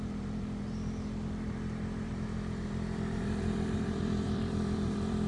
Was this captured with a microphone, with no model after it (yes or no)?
no